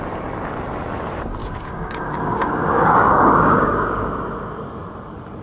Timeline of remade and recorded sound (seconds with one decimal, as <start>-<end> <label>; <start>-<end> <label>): 0.0-1.4 recorded; 1.4-4.1 remade; 4.1-5.4 recorded